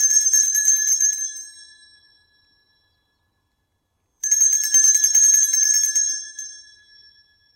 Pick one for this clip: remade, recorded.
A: remade